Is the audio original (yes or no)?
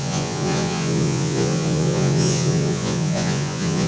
no